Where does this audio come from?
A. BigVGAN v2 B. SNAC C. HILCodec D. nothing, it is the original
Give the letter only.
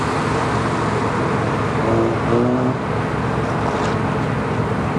D